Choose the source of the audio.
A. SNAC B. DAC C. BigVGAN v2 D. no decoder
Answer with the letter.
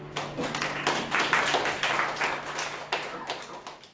D